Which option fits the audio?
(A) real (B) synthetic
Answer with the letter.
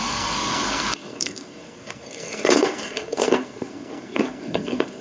B